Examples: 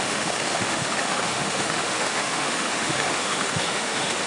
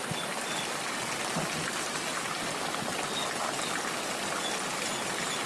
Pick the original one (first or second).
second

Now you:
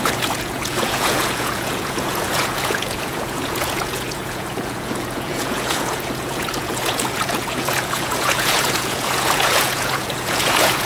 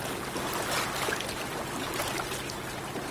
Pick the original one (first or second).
second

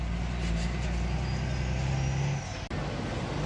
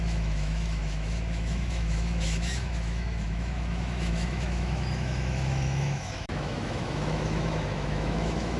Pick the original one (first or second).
first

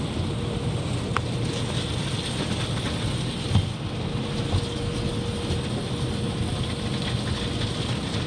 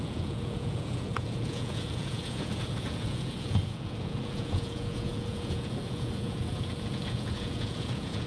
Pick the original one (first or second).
first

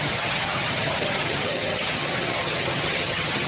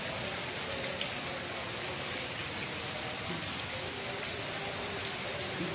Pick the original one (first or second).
second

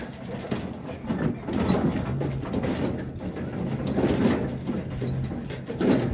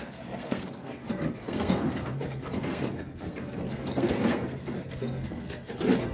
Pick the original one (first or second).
first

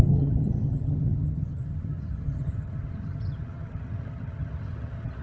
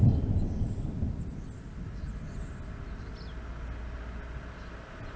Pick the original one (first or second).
second